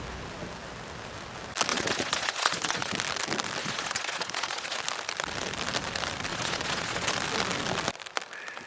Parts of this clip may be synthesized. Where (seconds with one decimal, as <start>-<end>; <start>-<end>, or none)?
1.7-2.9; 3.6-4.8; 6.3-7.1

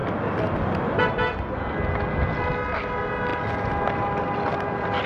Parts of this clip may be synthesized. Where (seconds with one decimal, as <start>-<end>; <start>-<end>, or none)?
none

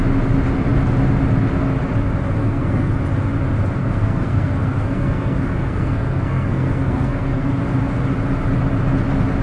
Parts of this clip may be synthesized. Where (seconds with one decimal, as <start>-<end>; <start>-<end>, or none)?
2.4-3.0; 3.8-7.5